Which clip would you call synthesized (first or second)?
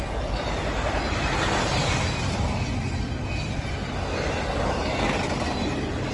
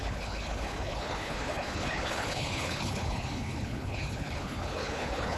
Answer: second